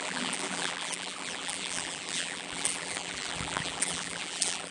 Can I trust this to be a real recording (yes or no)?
no